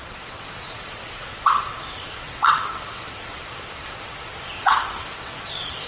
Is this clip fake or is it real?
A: fake